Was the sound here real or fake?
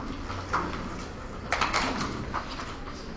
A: real